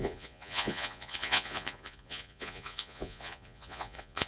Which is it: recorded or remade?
remade